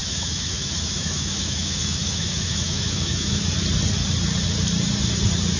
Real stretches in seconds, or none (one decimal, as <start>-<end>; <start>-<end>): 3.4-5.6